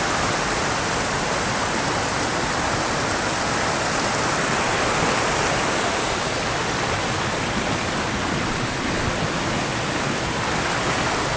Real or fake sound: real